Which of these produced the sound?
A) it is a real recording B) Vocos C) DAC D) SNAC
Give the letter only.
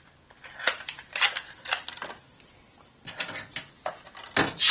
A